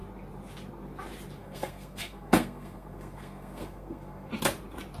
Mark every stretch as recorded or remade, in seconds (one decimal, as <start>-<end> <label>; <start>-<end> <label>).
0.0-1.4 recorded; 1.4-4.3 remade; 4.3-5.0 recorded